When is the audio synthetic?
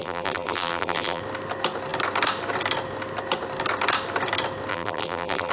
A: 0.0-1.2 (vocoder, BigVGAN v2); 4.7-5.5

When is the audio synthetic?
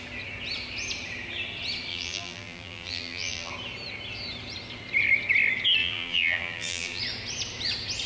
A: 1.9-3.5 (vocoder, BigVGAN v2); 5.8-7.0